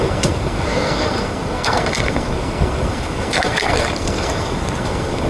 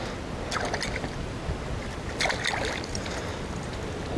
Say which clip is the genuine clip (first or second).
second